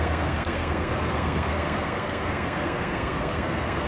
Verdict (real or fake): fake